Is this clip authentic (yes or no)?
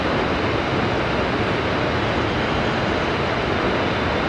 yes